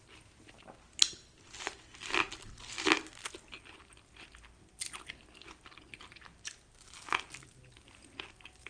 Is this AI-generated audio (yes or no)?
no